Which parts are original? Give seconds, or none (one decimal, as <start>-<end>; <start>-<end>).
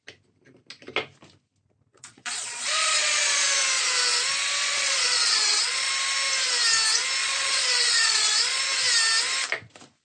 0.0-1.9; 3.4-4.6; 5.9-7.2; 8.6-10.0